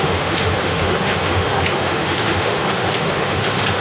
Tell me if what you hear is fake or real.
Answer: fake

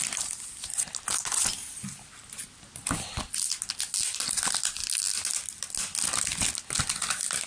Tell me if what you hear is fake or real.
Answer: real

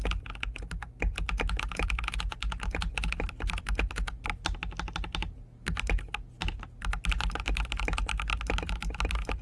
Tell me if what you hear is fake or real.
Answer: real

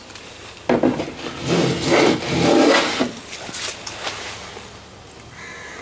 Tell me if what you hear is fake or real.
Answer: real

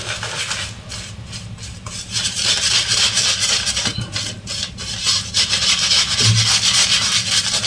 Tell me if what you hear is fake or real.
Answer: real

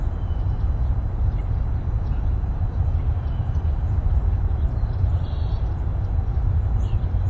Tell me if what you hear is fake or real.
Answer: fake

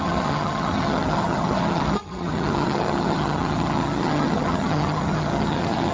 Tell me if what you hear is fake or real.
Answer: fake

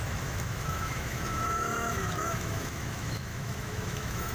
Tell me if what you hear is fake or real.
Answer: fake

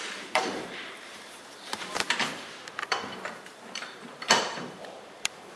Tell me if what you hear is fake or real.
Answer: fake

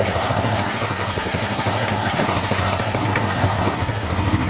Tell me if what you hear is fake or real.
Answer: fake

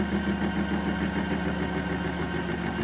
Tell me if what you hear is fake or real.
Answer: real